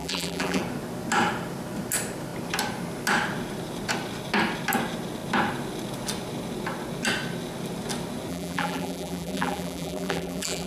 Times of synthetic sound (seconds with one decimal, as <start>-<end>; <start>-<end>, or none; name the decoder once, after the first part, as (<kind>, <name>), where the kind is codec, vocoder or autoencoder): 0.0-0.6 (vocoder, BigVGAN v2); 8.3-10.7